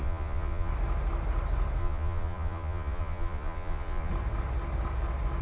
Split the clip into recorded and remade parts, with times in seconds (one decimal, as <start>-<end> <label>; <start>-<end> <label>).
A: 0.0-0.7 remade; 0.7-1.8 recorded; 1.8-4.1 remade; 4.1-5.4 recorded